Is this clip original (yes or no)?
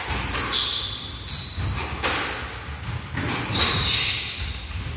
yes